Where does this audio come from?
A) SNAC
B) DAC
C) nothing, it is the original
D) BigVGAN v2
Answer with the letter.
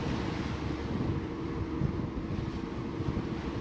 C